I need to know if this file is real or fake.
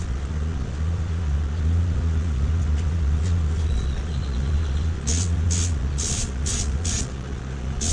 fake